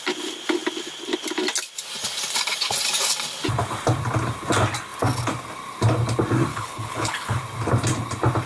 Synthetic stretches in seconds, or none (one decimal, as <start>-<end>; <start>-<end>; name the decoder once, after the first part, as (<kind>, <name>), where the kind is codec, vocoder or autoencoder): 6.5-7.4 (codec, HILCodec)